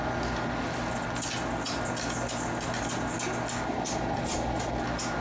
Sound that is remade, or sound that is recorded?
recorded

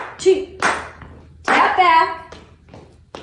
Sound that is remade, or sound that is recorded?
recorded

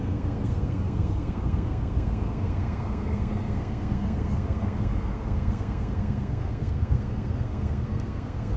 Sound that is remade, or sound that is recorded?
remade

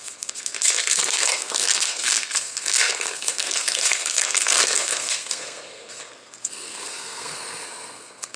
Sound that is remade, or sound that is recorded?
remade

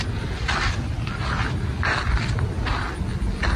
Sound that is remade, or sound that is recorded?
recorded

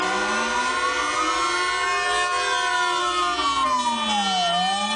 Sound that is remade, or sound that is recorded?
recorded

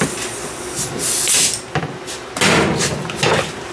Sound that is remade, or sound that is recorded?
recorded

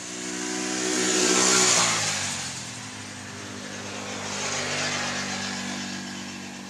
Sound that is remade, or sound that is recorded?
recorded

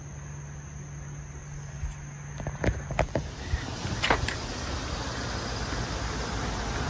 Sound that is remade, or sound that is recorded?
recorded